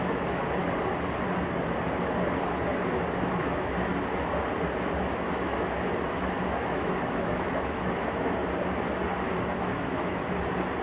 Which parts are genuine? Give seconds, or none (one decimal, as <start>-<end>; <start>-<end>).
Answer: 0.6-3.4; 3.9-5.0; 8.4-9.4; 10.2-10.8

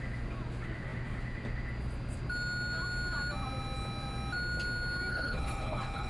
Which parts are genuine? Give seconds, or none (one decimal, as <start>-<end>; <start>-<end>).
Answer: 0.0-5.1

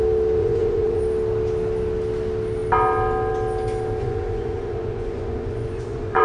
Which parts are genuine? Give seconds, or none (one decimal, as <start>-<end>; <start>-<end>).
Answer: 0.0-0.4; 1.0-4.0